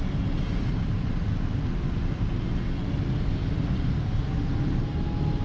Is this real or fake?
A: real